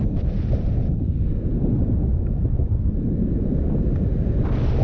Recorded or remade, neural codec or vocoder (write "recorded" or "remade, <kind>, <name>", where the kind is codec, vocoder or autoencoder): recorded